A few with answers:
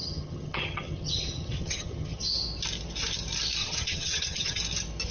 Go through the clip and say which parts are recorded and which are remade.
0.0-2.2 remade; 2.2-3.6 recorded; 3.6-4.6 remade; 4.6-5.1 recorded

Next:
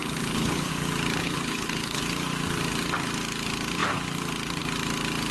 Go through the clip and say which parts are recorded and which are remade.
0.0-0.7 remade; 0.7-1.2 recorded; 1.2-2.0 remade; 2.0-5.3 recorded

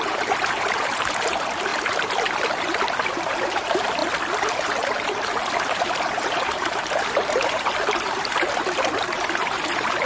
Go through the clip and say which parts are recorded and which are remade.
0.0-1.7 remade; 1.7-3.1 recorded; 3.1-4.0 remade; 4.0-5.9 recorded; 5.9-10.1 remade

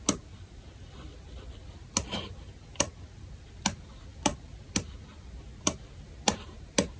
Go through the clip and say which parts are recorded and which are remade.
0.0-7.0 recorded